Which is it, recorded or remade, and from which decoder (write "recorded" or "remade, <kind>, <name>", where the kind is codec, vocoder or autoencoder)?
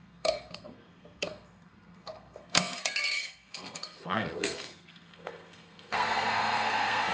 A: remade, codec, SNAC